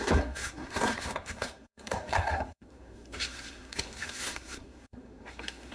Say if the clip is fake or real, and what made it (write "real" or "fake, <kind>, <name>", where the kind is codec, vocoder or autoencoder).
fake, codec, SNAC